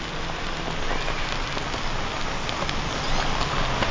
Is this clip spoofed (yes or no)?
no